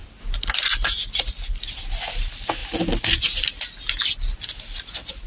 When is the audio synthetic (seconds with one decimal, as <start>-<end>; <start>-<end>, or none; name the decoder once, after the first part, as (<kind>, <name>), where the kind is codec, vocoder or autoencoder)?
none